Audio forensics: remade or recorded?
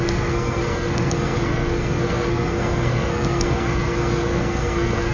remade